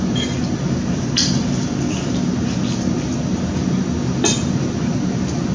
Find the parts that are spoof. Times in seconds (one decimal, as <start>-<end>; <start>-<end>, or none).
none